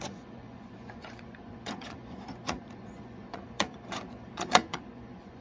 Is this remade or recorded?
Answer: remade